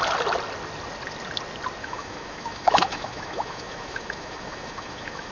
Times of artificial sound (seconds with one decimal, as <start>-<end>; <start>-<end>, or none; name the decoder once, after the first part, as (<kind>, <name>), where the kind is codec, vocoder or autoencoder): 1.8-5.3 (autoencoder, DAC-VAE)